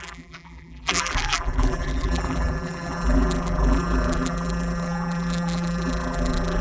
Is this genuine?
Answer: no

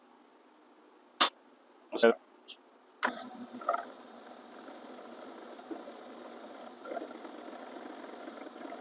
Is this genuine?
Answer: yes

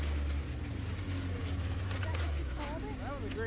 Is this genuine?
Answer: yes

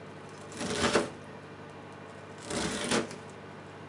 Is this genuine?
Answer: yes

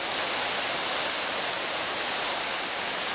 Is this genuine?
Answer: yes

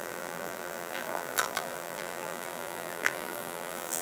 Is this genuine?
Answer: no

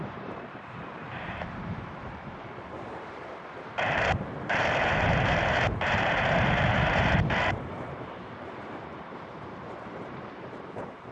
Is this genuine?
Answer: no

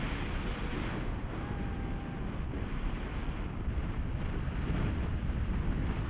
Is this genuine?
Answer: yes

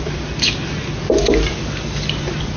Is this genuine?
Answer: no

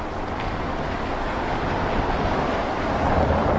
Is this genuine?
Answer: yes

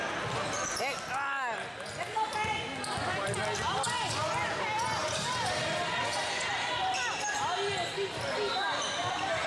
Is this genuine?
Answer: yes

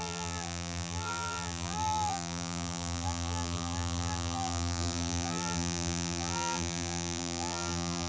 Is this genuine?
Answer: no